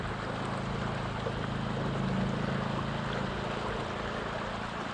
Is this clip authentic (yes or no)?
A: yes